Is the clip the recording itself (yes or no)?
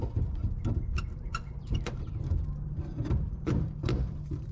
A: no